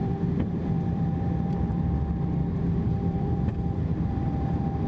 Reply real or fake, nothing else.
fake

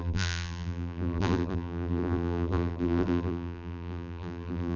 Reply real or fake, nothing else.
fake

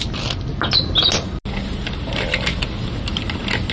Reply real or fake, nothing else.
real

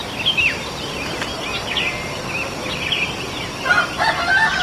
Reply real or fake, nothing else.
real